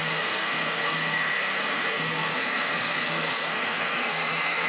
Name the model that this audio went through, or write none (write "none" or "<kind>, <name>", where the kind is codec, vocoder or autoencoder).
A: codec, SNAC